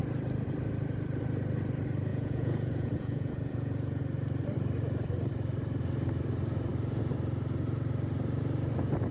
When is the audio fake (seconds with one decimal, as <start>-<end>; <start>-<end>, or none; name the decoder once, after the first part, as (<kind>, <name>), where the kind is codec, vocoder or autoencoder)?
2.1-4.0 (vocoder, Vocos)